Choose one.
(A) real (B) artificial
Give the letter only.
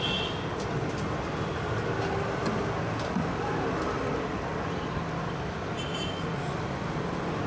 A